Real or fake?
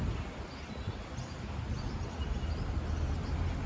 real